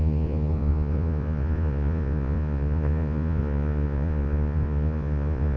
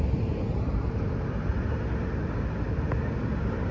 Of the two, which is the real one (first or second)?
second